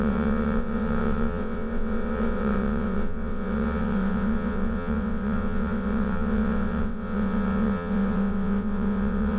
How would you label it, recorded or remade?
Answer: remade